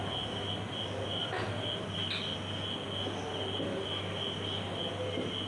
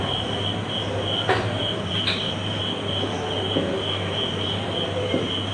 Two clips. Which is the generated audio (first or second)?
second